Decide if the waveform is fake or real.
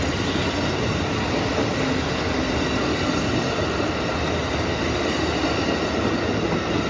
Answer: real